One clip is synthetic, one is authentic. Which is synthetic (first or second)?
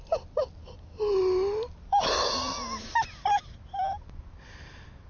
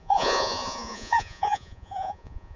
second